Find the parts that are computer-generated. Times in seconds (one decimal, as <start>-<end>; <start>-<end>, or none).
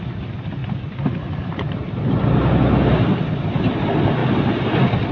4.2-5.1